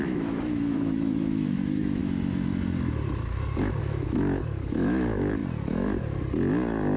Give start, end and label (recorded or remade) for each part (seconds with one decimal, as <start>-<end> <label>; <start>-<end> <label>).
0.0-2.0 remade; 2.0-3.8 recorded; 3.8-5.4 remade; 5.4-7.0 recorded